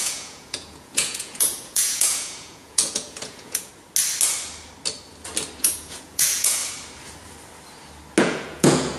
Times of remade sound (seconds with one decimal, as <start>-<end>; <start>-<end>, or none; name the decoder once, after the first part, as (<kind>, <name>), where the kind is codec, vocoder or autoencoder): 0.0-3.7 (vocoder, Vocos); 5.6-6.6; 8.2-9.0